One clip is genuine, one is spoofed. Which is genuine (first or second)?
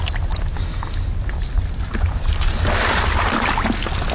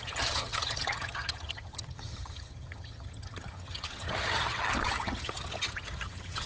first